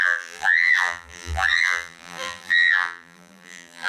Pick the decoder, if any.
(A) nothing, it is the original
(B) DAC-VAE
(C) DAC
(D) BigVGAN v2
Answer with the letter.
D